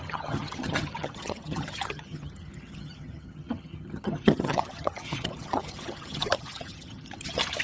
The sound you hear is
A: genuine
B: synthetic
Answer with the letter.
B